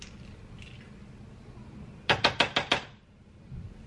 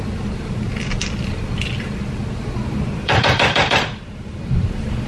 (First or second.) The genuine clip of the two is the first